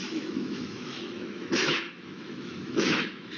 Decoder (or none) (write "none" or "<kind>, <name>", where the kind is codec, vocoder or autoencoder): autoencoder, DAC-VAE